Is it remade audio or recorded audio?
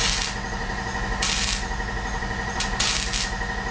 recorded